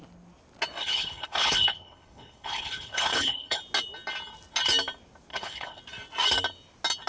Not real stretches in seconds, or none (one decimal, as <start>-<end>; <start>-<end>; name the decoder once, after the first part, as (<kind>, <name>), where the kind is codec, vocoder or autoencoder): 0.8-3.6 (codec, HILCodec); 5.3-5.8